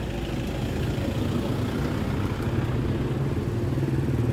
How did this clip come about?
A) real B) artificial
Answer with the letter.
A